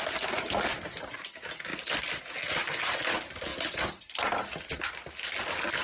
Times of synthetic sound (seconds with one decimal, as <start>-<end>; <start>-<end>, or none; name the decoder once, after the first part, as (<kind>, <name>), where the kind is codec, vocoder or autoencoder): 1.7-2.3 (vocoder, BigVGAN v2); 3.5-5.1